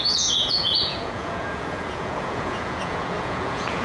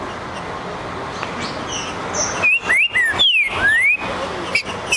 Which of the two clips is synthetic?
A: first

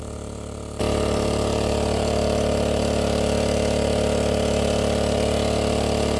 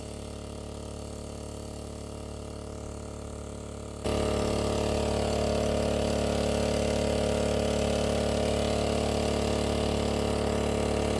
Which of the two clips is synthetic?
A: first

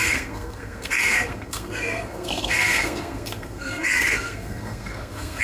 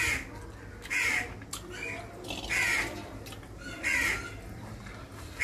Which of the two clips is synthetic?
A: first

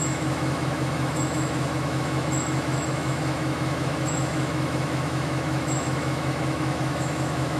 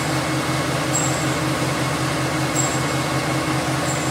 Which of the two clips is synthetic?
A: first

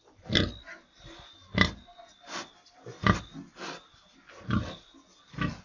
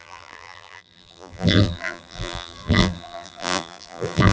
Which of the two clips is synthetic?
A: second